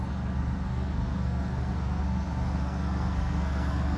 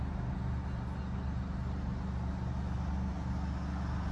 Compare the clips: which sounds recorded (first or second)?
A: second